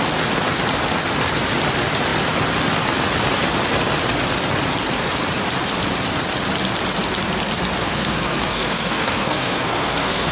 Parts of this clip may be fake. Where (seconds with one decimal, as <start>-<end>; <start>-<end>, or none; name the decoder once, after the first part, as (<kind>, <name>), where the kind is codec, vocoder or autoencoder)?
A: 7.8-10.3 (codec, SNAC)

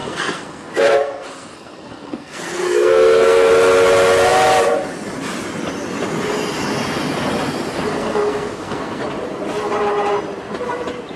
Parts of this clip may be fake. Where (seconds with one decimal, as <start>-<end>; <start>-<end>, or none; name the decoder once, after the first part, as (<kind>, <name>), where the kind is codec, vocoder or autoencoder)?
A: 0.0-3.5 (codec, SNAC); 7.9-9.0